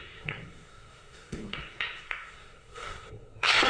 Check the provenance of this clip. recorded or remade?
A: remade